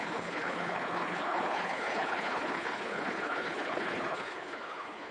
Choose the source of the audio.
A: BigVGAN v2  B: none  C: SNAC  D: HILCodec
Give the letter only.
D